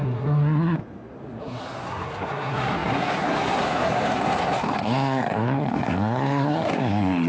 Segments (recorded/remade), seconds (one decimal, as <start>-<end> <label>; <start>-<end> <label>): 0.0-0.8 remade; 0.8-1.4 recorded; 1.4-7.3 remade